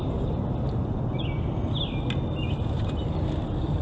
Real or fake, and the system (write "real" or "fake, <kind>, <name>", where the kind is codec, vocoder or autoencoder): real